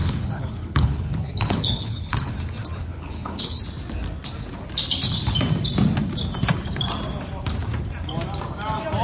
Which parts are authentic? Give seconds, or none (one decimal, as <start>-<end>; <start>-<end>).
2.3-2.8; 3.6-9.0